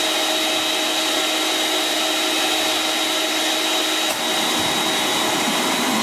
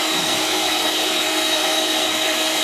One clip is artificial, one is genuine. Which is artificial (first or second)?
second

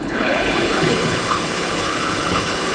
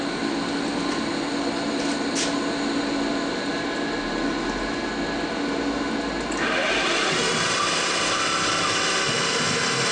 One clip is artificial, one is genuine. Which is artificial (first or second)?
first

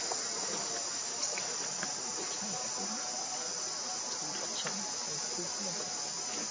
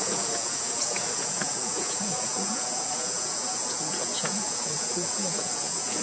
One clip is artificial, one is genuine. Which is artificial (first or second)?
second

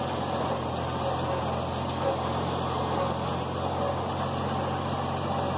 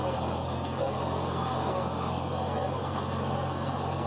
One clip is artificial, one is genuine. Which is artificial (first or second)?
second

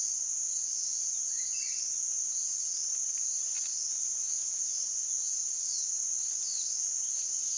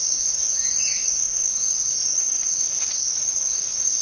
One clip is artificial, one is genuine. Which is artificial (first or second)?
second